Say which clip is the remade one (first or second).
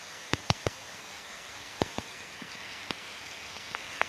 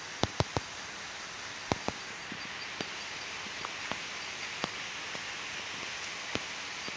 first